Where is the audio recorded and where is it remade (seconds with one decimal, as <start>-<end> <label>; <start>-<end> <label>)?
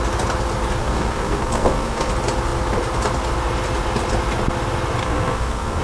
0.0-0.8 recorded; 0.8-2.1 remade; 2.1-5.0 recorded; 5.0-5.8 remade